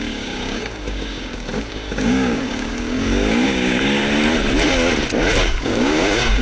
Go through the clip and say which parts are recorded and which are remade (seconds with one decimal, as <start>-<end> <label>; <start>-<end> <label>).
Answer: 0.0-4.0 remade; 4.0-5.4 recorded; 5.4-6.4 remade